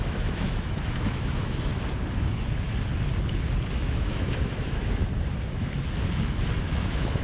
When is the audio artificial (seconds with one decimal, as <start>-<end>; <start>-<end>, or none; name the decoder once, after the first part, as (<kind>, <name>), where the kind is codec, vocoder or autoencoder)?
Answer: 0.0-1.7 (autoencoder, DAC-VAE); 3.7-5.1; 6.6-7.2